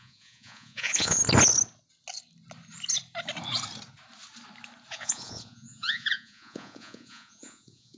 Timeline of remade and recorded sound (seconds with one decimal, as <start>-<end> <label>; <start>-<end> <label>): 0.0-1.2 remade; 1.2-4.9 recorded; 4.9-8.0 remade